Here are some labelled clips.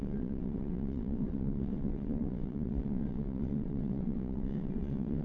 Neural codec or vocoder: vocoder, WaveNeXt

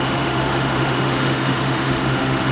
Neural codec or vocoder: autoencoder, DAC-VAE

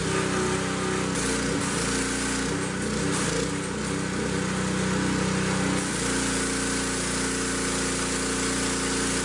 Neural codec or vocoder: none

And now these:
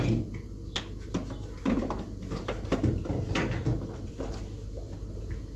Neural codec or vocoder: none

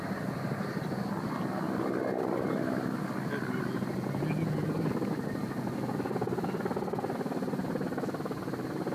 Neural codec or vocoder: none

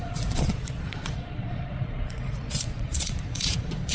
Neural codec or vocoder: vocoder, Vocos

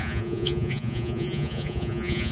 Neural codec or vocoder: vocoder, Vocos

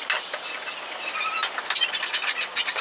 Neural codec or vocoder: none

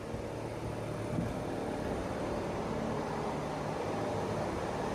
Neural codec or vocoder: none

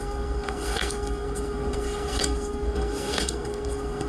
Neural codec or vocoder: codec, SNAC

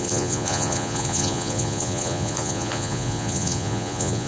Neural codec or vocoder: vocoder, Vocos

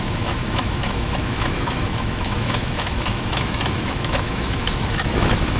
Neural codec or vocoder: autoencoder, DAC-VAE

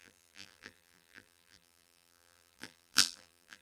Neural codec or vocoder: vocoder, BigVGAN v2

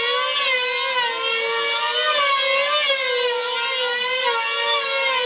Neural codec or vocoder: none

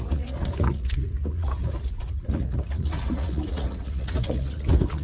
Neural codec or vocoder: vocoder, Vocos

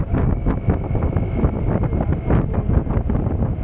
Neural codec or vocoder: none